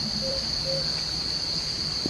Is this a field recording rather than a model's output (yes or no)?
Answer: no